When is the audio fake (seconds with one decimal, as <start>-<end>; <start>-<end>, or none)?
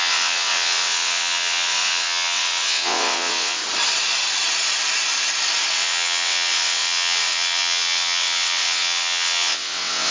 0.0-3.6; 5.7-10.1